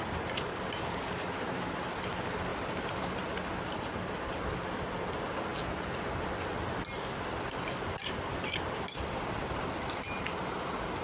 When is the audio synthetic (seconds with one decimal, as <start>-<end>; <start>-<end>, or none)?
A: none